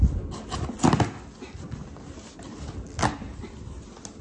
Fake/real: real